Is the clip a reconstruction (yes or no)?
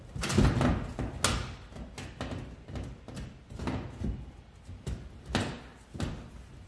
no